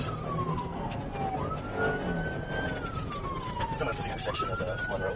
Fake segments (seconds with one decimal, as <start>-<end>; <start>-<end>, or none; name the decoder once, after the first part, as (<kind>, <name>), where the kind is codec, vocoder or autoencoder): 0.5-1.0 (codec, SNAC)